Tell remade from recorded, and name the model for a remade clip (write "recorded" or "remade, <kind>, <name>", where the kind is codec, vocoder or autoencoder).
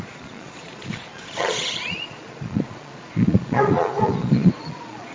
remade, vocoder, Vocos